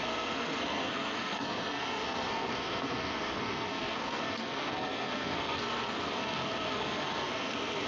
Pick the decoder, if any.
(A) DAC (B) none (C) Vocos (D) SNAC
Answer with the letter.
D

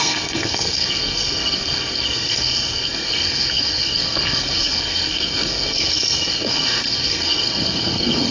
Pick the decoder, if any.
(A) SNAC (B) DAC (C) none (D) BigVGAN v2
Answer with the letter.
A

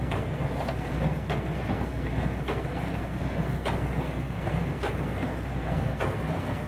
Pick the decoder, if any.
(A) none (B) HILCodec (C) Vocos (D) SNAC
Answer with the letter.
D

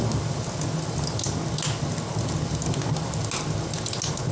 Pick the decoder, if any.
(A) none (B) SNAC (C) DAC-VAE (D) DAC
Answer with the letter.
A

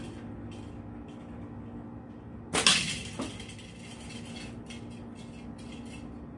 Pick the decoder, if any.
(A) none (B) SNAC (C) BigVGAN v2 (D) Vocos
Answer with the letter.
A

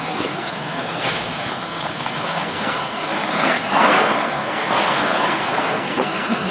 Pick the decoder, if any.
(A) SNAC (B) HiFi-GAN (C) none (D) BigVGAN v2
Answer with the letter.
A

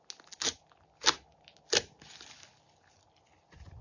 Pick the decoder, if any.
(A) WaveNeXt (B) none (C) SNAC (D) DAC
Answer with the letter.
B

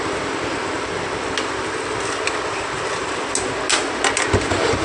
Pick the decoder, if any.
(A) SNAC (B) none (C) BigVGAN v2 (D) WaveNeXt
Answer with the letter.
B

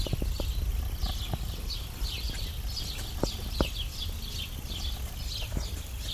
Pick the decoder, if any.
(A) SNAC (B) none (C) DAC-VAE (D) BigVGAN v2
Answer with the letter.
B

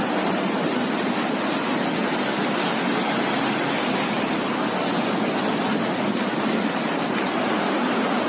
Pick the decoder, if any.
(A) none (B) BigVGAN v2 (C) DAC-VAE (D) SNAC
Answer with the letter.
A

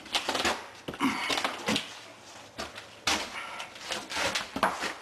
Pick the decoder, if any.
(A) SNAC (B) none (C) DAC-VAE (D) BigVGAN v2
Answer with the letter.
B